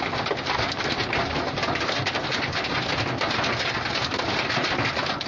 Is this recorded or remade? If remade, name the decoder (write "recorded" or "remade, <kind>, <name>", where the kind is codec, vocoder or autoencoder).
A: recorded